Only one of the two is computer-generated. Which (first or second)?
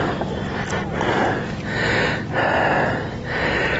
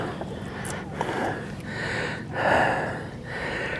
second